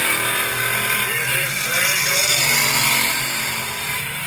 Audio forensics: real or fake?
fake